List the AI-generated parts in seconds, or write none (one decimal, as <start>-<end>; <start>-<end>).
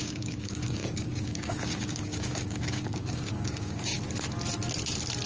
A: 0.0-3.9